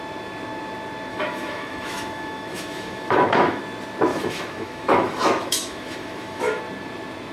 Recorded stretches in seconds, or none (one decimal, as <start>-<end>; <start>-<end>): 0.0-1.1; 3.6-4.1; 6.6-7.3